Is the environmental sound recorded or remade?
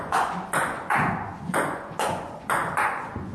remade